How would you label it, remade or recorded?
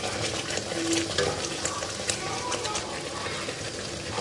recorded